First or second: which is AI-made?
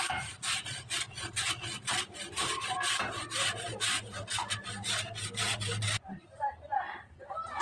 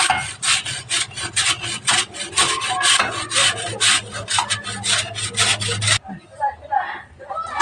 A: first